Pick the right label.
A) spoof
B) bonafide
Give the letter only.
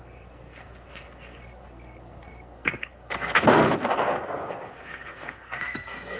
A